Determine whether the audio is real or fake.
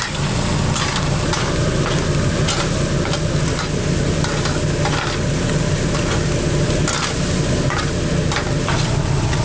real